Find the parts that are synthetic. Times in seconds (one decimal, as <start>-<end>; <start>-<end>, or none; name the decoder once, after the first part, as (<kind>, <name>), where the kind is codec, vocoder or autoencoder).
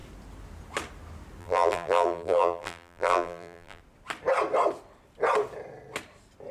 1.4-3.8 (vocoder, BigVGAN v2)